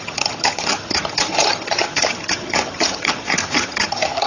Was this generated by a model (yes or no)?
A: yes